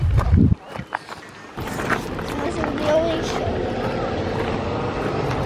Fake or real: fake